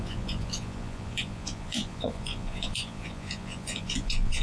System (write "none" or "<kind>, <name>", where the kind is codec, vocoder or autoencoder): vocoder, Vocos